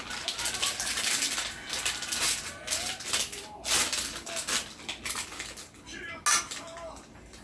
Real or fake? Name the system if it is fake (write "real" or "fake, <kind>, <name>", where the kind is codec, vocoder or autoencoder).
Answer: real